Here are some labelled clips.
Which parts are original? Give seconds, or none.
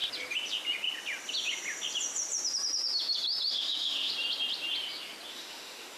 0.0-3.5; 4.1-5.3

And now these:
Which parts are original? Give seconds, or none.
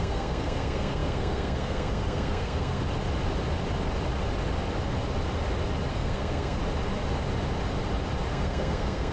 2.8-5.9; 6.6-8.3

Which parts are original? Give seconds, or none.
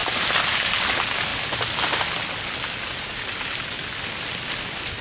0.0-5.0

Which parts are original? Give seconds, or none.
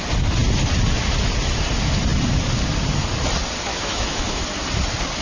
0.0-3.7; 4.4-5.2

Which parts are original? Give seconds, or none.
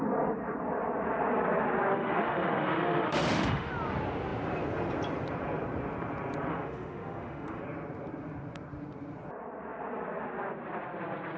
0.0-1.9; 3.7-6.5; 7.6-11.4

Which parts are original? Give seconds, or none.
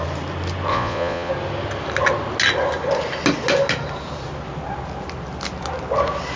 0.0-0.7; 1.3-6.4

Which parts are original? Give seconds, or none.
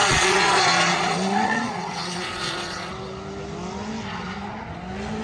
2.9-5.2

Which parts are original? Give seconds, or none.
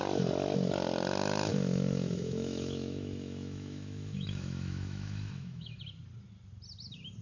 0.0-1.5; 5.8-7.2